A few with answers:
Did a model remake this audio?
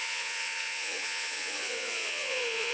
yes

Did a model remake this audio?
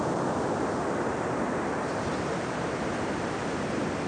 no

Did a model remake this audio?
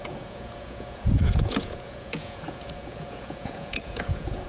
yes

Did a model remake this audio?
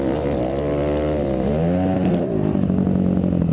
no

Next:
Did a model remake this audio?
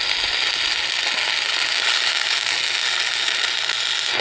no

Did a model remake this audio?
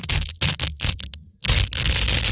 no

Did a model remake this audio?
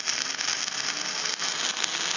no